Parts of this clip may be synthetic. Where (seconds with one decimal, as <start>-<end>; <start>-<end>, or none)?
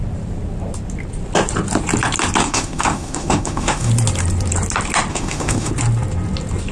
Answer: 2.4-3.9; 5.1-5.7